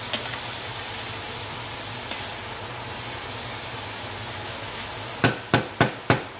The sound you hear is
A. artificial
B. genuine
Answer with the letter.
B